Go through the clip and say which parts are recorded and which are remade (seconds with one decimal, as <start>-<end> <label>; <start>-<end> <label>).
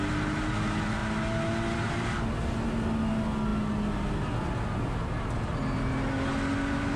0.0-7.0 recorded